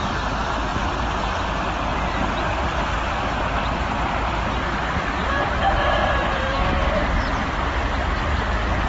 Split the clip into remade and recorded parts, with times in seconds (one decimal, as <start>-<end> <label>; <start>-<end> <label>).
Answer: 0.0-1.9 recorded; 1.9-3.4 remade; 3.4-6.0 recorded; 6.0-8.2 remade; 8.2-8.9 recorded